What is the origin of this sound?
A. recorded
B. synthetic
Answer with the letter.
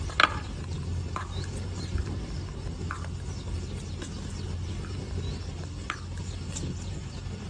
A